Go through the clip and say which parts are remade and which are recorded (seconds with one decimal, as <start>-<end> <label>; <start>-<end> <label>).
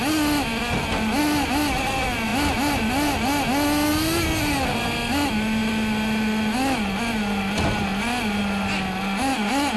0.0-9.8 recorded